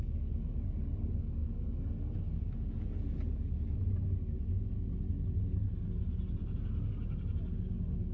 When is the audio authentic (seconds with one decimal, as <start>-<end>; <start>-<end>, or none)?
0.0-8.1